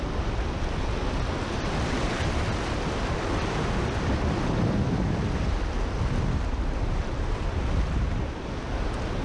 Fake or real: real